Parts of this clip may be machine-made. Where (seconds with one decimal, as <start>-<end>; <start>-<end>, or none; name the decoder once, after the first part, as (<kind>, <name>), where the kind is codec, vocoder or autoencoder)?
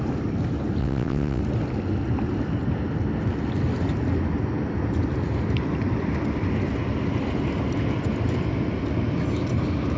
0.8-1.4 (vocoder, WaveNeXt)